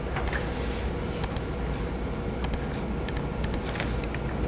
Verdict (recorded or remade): recorded